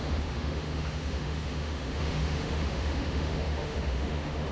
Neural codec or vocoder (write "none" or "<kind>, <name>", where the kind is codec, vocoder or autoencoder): autoencoder, DAC-VAE